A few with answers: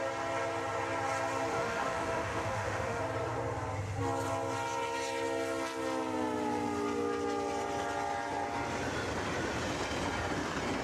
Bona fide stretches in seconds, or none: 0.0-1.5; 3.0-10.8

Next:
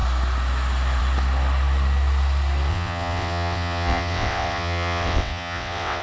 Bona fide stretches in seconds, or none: 0.0-2.7

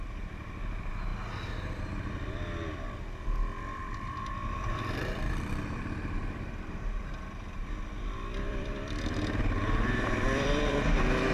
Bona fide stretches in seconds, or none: 0.0-3.8; 7.0-8.5; 10.8-11.3